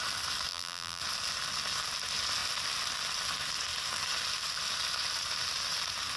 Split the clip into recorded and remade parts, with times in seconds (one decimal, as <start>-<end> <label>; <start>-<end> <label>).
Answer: 0.0-0.5 recorded; 0.5-1.0 remade; 1.0-6.2 recorded